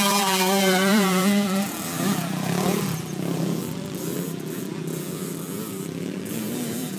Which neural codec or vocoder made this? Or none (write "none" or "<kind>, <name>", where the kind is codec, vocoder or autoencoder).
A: vocoder, BigVGAN v2